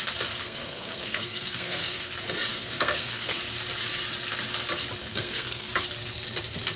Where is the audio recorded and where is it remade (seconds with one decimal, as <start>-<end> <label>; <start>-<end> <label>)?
0.0-0.4 recorded; 0.4-2.1 remade; 2.1-2.5 recorded; 2.5-3.4 remade; 3.4-5.0 recorded; 5.0-5.7 remade; 5.7-6.8 recorded